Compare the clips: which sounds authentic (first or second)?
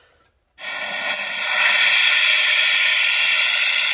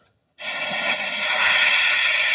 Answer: first